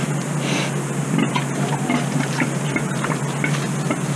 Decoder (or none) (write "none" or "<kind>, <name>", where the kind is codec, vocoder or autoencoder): none